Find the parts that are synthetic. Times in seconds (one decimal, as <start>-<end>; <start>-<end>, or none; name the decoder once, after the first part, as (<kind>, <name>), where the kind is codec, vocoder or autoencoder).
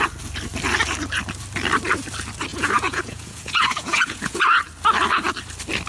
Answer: 2.5-4.4 (vocoder, Vocos)